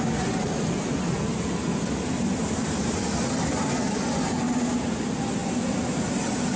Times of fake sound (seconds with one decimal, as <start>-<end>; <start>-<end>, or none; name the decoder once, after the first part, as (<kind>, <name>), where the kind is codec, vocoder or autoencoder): none